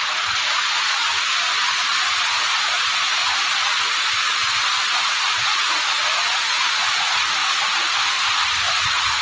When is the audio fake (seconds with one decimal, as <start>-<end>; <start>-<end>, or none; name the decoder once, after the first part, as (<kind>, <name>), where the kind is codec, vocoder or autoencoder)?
0.0-1.0 (vocoder, Vocos); 1.7-7.4; 8.7-9.2